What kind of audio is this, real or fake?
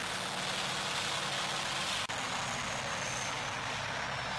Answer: real